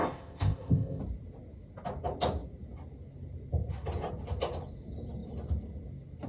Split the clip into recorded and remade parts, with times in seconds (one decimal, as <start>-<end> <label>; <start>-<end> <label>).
0.0-1.0 remade; 1.0-6.3 recorded